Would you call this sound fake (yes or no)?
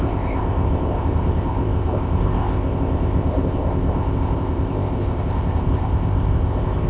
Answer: yes